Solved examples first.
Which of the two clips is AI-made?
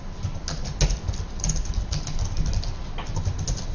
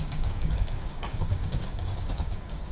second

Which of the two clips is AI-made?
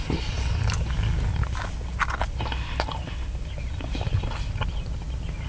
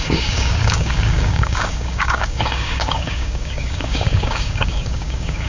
second